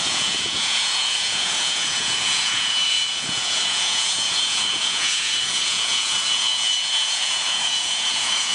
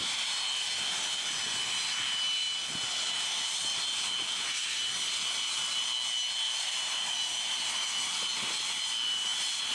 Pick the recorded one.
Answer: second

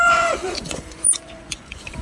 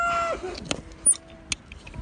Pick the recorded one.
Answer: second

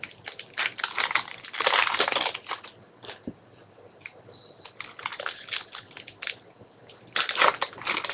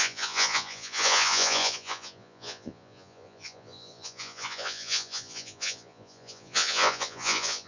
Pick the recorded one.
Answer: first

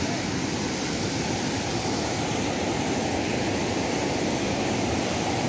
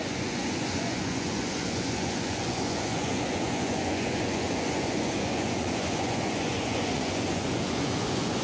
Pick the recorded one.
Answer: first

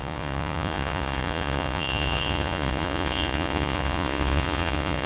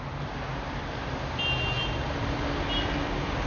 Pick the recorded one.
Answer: second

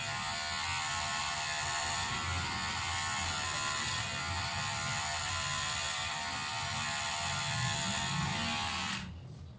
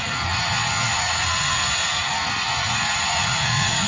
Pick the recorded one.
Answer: first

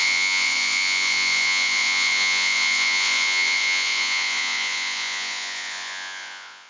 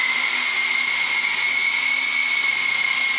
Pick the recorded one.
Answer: second